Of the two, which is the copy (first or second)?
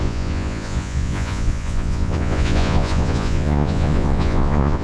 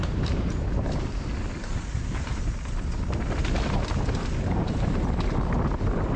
first